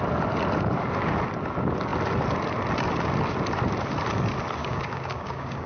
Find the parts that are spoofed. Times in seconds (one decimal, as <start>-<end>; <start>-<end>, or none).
4.6-5.7